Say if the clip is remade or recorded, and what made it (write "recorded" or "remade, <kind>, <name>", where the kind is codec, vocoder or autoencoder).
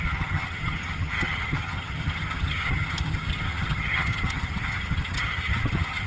remade, vocoder, HiFi-GAN